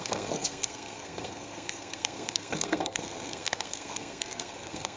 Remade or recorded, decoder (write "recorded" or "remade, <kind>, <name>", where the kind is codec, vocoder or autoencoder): remade, codec, SNAC